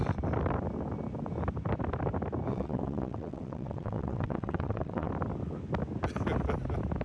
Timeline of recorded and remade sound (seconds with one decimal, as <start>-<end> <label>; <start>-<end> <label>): 0.0-2.5 recorded; 2.5-5.1 remade; 5.1-7.0 recorded